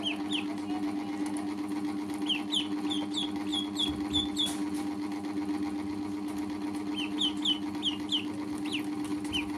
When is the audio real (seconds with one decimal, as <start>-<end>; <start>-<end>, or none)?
0.0-9.6